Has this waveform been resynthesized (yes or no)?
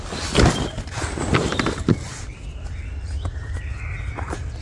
no